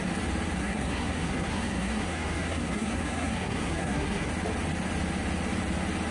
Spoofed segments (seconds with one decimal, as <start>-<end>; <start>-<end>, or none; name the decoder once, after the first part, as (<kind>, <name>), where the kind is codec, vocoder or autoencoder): 0.6-4.3 (codec, SNAC)